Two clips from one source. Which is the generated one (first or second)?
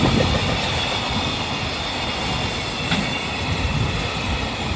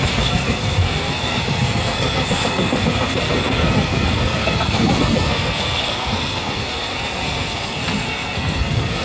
second